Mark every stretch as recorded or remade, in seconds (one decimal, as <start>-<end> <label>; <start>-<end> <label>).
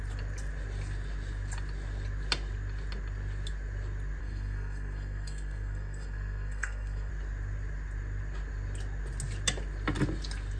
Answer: 0.0-4.2 recorded; 4.2-7.1 remade; 7.1-10.6 recorded